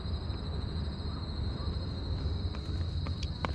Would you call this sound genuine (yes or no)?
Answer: yes